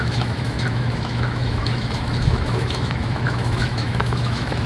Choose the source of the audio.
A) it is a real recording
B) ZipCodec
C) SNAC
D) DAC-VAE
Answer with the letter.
D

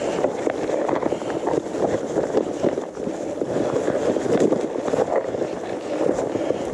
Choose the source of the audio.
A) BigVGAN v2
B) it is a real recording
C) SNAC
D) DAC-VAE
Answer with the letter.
B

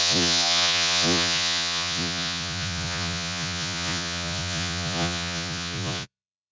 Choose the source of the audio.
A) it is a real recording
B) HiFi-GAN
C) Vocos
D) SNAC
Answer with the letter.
C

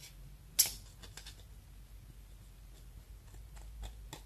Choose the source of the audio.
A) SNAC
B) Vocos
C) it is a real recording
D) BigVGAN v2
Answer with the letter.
C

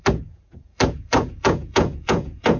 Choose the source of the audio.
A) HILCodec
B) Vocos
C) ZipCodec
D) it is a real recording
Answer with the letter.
B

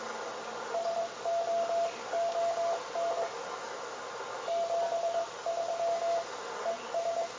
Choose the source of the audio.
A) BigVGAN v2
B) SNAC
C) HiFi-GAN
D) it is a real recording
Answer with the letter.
D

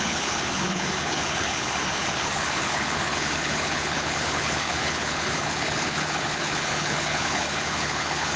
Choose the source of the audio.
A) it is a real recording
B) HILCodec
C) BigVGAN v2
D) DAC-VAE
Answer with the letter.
B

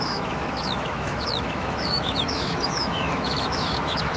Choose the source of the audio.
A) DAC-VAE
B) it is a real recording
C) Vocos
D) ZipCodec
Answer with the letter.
A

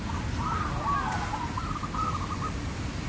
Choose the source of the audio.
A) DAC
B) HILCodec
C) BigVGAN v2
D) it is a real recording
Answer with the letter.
D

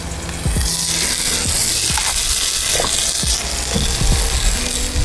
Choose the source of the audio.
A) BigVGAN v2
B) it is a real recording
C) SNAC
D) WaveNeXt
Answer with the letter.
B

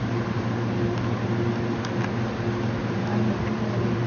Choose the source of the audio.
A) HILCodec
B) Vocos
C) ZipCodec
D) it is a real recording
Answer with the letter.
D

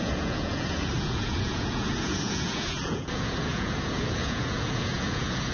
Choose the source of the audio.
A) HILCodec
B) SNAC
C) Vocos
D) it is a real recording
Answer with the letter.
C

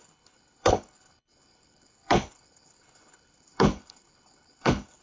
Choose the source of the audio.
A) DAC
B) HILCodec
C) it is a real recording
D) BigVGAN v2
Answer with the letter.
B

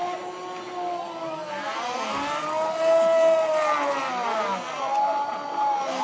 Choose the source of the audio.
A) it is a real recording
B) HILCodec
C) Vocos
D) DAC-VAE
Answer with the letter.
A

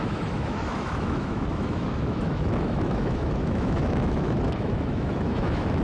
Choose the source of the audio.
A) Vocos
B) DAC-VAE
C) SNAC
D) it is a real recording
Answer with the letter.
B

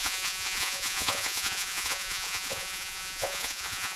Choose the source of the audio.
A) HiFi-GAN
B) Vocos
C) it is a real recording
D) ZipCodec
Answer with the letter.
B